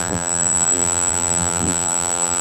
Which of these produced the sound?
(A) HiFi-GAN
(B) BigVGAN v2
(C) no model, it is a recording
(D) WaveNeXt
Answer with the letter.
B